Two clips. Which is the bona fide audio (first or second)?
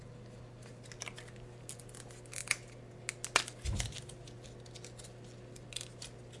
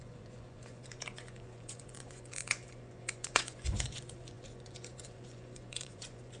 first